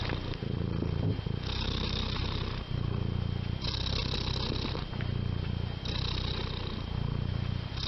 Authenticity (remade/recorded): remade